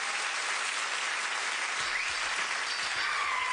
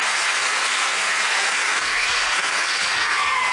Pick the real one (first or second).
first